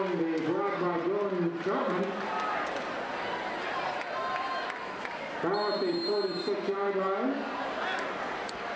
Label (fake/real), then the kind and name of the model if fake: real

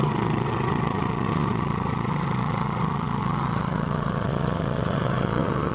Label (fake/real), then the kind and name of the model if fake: fake, vocoder, Vocos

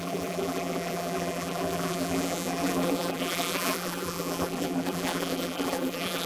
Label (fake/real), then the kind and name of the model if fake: fake, vocoder, BigVGAN v2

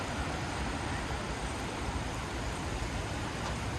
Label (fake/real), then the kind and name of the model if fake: fake, vocoder, BigVGAN v2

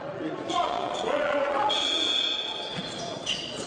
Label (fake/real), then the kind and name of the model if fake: fake, vocoder, Vocos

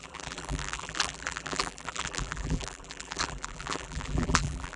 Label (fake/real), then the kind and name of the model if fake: fake, vocoder, BigVGAN v2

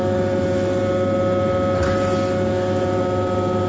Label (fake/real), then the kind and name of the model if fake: real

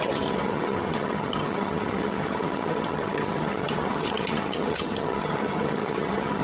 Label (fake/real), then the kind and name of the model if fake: fake, vocoder, HiFi-GAN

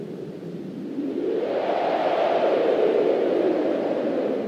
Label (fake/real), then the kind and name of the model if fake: real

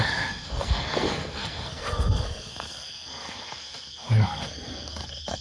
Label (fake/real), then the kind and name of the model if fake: fake, codec, SNAC